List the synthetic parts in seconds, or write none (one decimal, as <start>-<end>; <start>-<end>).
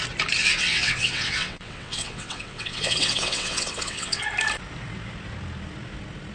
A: 0.4-4.2